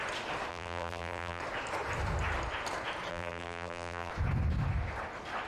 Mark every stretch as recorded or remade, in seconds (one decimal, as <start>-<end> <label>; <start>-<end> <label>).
0.0-0.5 recorded; 0.5-1.4 remade; 1.4-3.1 recorded; 3.1-4.1 remade; 4.1-5.5 recorded